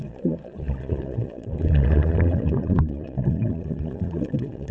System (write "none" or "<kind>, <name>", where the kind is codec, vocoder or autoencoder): vocoder, Vocos